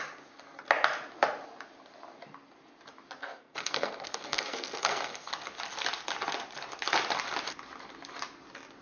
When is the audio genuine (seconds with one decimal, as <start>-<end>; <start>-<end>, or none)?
0.0-3.2; 5.3-8.8